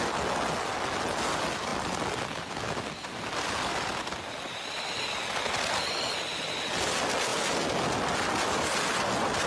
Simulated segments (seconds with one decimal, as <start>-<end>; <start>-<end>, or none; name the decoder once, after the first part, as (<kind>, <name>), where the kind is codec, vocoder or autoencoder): none